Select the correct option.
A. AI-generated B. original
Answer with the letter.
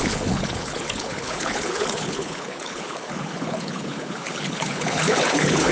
A